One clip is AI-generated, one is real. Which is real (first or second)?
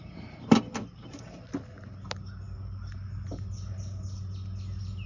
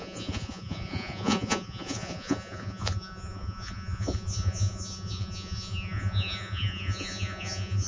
first